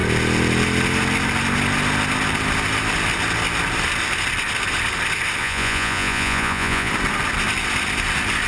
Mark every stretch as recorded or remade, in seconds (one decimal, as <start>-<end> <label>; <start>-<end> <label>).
0.0-5.4 recorded; 5.4-6.9 remade; 6.9-8.5 recorded